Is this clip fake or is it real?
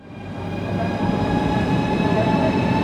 fake